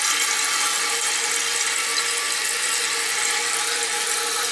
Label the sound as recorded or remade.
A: recorded